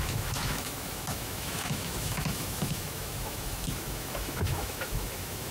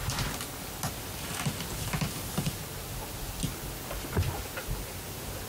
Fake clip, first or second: first